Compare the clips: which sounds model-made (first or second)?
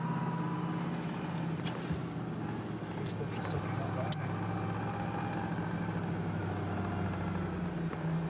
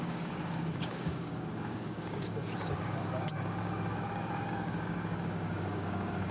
second